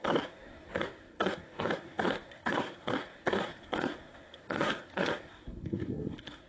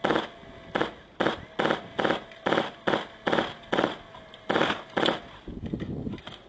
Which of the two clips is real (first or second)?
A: second